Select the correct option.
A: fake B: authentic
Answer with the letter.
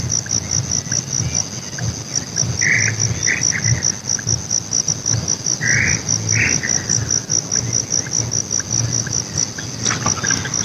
B